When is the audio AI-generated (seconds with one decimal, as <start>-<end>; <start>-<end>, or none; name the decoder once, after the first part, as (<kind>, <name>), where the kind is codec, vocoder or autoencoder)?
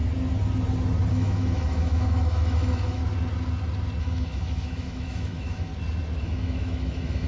1.1-3.0 (autoencoder, DAC-VAE); 4.0-5.7; 6.2-7.3